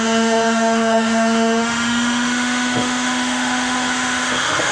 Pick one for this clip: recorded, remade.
remade